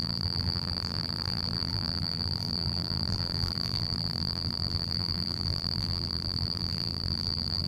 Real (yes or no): no